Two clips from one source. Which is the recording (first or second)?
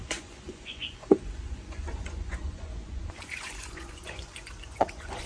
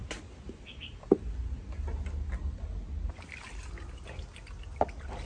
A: second